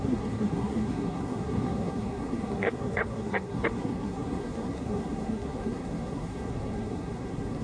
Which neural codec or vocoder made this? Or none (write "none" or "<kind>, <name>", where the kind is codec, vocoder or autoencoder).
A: codec, SNAC